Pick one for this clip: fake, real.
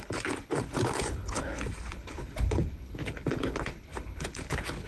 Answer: fake